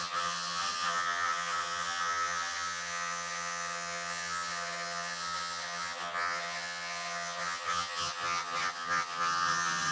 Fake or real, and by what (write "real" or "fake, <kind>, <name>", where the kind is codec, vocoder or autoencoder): fake, vocoder, HiFi-GAN